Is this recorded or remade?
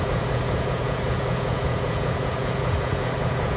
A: remade